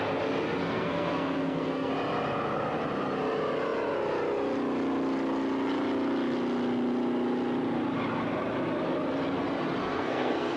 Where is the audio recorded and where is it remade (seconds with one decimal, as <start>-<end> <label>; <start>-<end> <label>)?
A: 0.0-0.6 recorded; 0.6-1.9 remade; 1.9-9.8 recorded; 9.8-10.6 remade